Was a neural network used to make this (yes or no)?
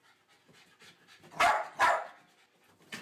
no